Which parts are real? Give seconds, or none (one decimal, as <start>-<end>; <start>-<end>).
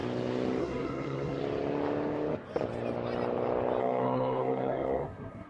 0.0-0.6; 1.4-3.8